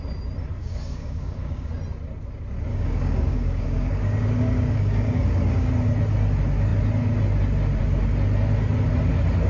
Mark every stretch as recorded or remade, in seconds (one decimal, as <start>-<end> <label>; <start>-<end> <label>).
0.0-0.6 recorded; 0.6-1.7 remade; 1.7-2.7 recorded; 2.7-5.7 remade; 5.7-9.5 recorded